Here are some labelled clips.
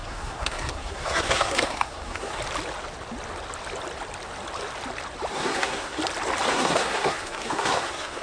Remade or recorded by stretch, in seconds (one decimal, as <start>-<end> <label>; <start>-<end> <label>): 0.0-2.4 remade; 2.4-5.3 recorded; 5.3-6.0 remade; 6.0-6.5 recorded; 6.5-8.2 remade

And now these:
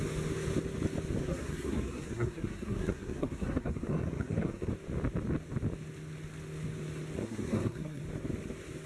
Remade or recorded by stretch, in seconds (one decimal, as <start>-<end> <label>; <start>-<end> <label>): 0.0-1.2 recorded; 1.2-4.7 remade; 4.7-7.2 recorded; 7.2-8.0 remade; 8.0-8.9 recorded

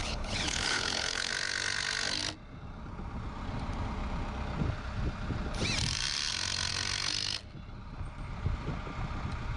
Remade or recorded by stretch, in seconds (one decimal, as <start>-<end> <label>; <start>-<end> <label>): 0.0-1.3 remade; 1.3-9.6 recorded